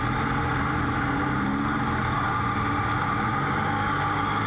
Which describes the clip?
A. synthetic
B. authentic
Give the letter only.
B